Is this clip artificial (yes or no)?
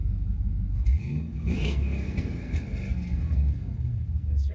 yes